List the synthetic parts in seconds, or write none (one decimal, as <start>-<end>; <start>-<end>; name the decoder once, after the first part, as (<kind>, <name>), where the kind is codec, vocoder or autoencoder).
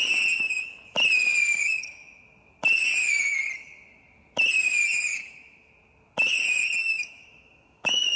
1.5-2.2 (autoencoder, DAC-VAE); 5.1-5.7; 6.8-8.2